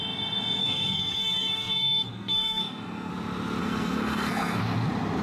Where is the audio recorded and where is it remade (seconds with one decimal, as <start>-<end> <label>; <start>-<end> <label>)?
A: 0.0-0.6 recorded; 0.6-3.1 remade; 3.1-3.6 recorded; 3.6-4.6 remade; 4.6-5.2 recorded